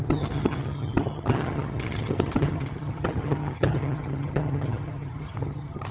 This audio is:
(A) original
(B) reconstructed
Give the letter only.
B